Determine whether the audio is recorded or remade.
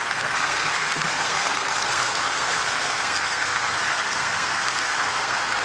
remade